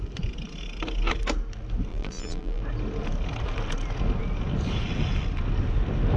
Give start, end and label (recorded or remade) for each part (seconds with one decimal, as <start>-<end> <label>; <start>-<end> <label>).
0.0-1.9 recorded; 1.9-2.6 remade; 2.6-6.2 recorded

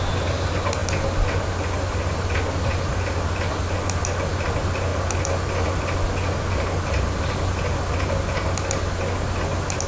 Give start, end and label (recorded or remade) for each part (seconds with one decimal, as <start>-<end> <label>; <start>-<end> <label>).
0.0-9.9 recorded

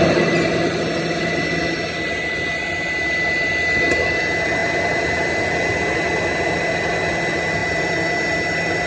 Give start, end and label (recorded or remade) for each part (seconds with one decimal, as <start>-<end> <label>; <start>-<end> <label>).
0.0-8.9 recorded

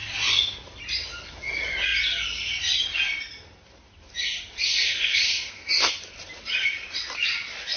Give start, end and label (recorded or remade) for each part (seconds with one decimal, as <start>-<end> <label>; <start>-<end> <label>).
0.0-4.7 recorded; 4.7-5.7 remade; 5.7-7.8 recorded

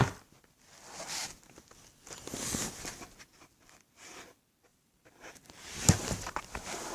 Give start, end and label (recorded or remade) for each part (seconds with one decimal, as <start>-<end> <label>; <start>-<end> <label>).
0.0-4.7 recorded; 4.7-6.9 remade

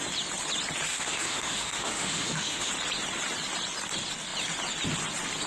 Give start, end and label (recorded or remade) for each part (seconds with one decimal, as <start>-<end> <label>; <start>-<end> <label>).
0.0-0.9 recorded; 0.9-2.7 remade; 2.7-5.5 recorded